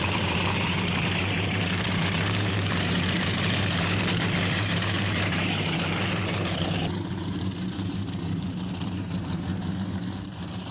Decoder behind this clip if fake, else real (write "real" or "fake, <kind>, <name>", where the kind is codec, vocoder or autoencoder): fake, vocoder, BigVGAN v2